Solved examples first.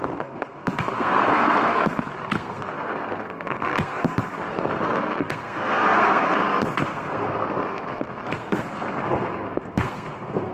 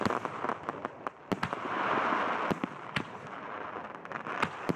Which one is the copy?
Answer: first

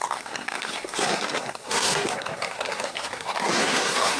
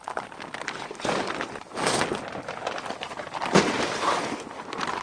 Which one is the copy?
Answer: first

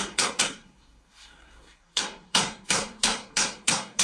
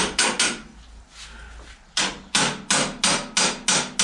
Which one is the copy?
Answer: first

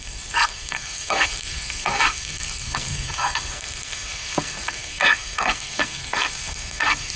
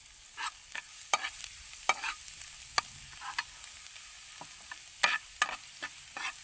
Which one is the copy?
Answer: first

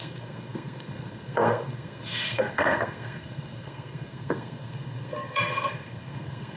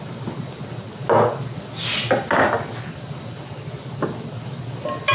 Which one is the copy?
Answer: first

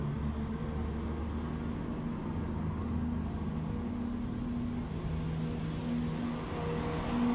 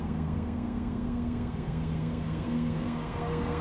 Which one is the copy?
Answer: second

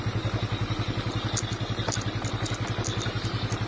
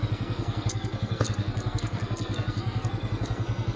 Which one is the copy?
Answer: second